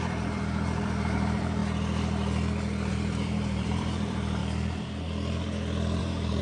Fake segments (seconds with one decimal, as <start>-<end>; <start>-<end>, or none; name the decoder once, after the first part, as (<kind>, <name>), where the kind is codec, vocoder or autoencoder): 0.0-1.6 (vocoder, BigVGAN v2); 2.9-4.4; 6.0-6.4